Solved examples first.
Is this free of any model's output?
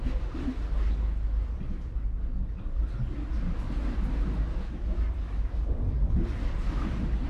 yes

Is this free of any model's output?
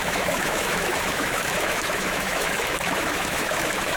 no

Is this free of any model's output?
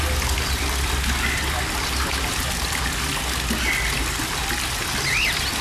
yes